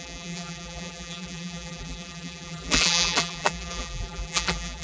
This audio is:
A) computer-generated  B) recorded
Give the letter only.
A